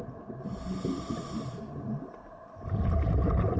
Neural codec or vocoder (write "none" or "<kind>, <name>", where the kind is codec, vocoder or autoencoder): none